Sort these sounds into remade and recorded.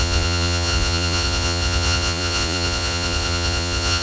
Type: remade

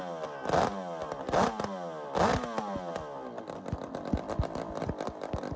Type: recorded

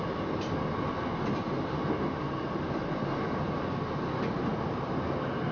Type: recorded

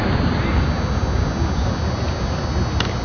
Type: recorded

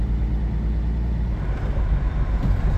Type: recorded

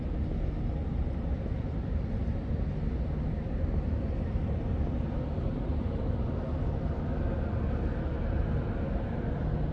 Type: recorded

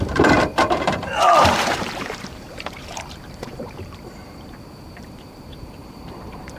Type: remade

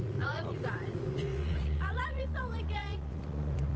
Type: remade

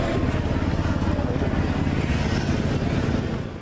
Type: recorded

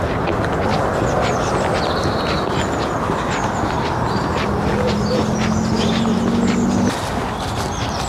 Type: recorded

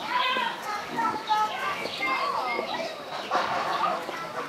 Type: remade